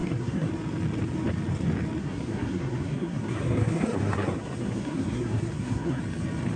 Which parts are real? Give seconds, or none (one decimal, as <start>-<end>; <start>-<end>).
0.5-2.0; 6.0-6.6